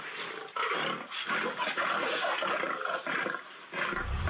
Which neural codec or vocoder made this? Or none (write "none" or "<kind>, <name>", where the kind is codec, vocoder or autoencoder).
none